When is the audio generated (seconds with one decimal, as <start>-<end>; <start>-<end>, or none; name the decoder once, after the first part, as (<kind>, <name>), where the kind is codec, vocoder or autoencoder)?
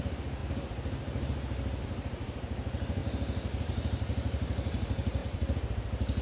0.0-0.4 (vocoder, BigVGAN v2); 1.8-3.0; 3.6-5.2